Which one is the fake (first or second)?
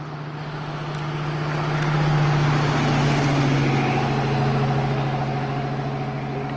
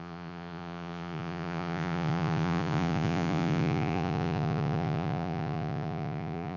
second